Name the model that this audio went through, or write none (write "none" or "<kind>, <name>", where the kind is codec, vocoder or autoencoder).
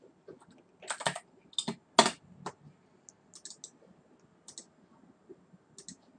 none